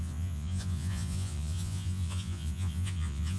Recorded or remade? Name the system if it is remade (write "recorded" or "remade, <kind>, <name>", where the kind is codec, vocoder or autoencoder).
remade, vocoder, Vocos